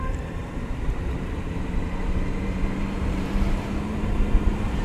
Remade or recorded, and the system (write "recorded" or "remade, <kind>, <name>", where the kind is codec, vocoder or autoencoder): remade, vocoder, BigVGAN v2